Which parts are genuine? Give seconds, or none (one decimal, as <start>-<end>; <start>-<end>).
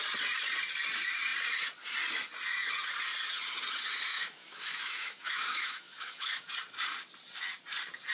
0.0-4.1; 6.5-8.1